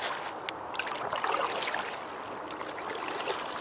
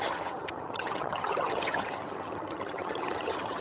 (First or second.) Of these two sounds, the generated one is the second